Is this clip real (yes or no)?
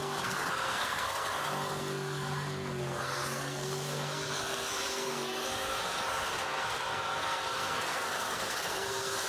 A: no